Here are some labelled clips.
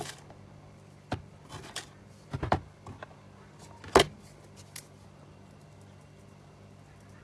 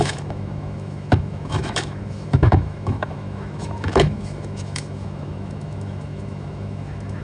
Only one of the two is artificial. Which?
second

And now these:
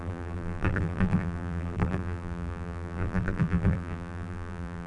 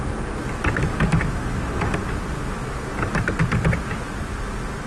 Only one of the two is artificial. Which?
first